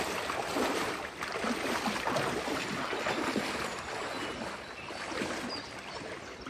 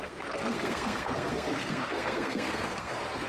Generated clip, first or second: second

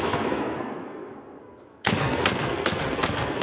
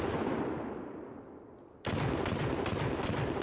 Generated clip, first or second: first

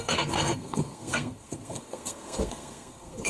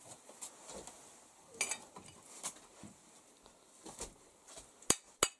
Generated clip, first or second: first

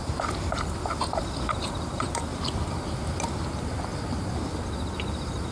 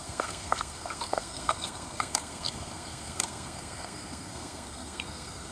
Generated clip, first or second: second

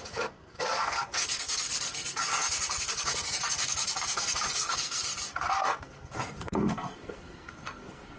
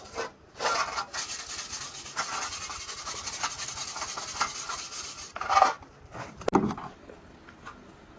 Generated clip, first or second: first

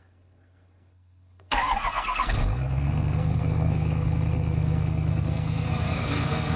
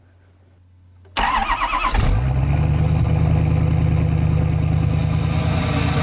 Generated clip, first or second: first